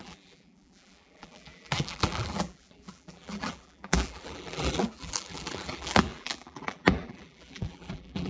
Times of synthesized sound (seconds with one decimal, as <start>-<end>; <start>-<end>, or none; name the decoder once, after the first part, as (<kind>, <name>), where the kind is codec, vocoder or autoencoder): 0.0-8.3 (vocoder, BigVGAN v2)